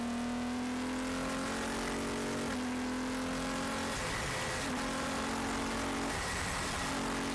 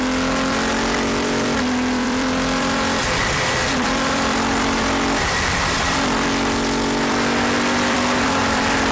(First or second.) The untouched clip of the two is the first